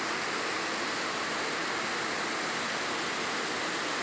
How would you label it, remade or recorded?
recorded